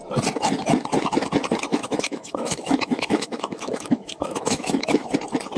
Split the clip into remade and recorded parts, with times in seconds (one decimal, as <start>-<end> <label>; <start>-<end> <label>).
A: 0.0-1.7 recorded; 1.7-5.1 remade; 5.1-5.6 recorded